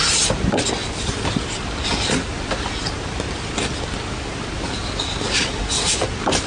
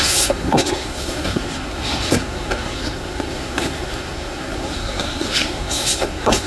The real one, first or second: first